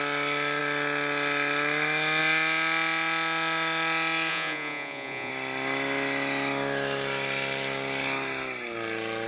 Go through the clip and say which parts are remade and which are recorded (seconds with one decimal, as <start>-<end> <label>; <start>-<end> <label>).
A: 0.0-4.3 recorded; 4.3-5.3 remade; 5.3-9.3 recorded